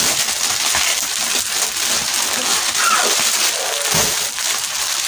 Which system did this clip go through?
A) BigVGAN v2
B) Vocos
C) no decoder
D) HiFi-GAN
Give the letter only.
C